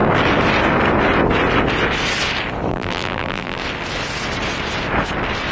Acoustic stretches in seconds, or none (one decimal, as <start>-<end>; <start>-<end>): 0.0-2.7; 3.6-5.5